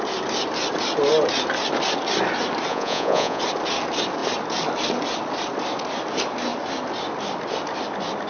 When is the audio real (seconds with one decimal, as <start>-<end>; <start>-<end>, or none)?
0.0-2.7; 3.4-8.3